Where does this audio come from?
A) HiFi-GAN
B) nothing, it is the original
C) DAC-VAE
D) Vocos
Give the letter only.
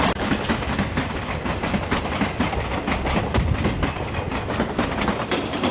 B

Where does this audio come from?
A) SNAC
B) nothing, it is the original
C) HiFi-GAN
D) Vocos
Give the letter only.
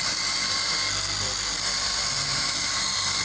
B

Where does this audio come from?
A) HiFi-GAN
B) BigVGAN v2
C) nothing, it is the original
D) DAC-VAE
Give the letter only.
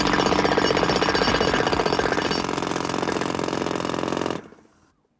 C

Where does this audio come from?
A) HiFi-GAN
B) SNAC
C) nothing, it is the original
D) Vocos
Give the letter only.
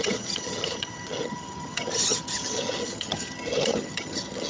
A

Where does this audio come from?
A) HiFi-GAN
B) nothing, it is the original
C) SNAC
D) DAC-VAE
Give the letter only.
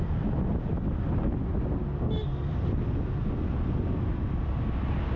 B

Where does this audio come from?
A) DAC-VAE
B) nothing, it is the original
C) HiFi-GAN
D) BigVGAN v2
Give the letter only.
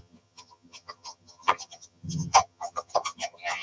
C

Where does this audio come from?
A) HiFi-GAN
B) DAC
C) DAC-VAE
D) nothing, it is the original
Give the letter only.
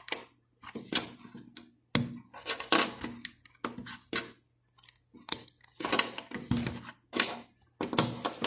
D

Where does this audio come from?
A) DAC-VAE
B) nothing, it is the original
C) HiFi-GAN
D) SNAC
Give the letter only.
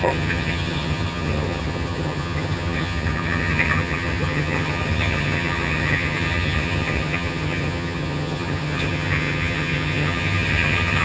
C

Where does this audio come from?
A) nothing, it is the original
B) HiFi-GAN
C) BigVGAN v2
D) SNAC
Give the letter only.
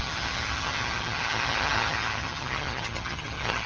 B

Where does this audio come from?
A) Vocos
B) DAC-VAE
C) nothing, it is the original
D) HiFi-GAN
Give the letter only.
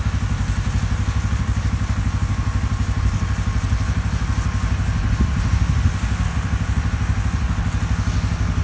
C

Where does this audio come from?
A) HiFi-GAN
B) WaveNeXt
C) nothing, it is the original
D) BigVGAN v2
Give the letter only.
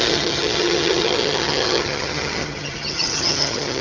A